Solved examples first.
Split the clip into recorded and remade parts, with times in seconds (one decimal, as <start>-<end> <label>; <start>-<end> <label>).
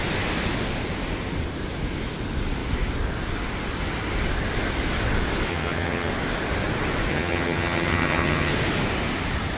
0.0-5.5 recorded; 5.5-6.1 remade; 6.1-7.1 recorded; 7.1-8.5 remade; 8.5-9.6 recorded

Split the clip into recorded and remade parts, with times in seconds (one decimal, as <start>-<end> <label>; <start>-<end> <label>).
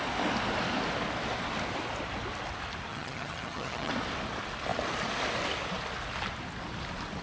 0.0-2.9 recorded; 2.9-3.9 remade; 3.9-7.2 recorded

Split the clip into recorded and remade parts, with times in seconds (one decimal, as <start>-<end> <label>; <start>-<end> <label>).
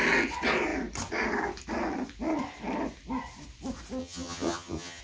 0.0-4.0 recorded; 4.0-5.0 remade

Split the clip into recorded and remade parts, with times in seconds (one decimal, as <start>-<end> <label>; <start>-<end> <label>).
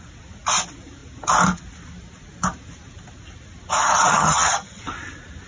0.0-4.1 recorded; 4.1-4.8 remade; 4.8-5.5 recorded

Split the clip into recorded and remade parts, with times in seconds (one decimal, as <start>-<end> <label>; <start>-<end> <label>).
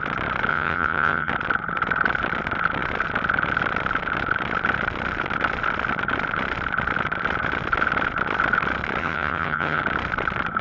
0.0-0.5 recorded; 0.5-1.3 remade; 1.3-9.0 recorded; 9.0-9.8 remade; 9.8-10.6 recorded